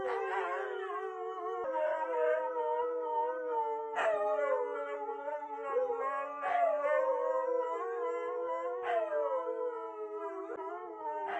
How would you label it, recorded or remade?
recorded